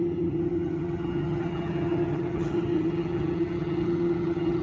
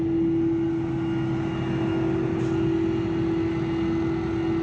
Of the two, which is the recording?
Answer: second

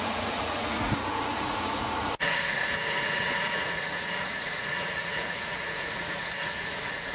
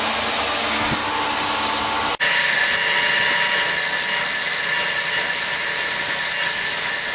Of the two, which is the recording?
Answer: second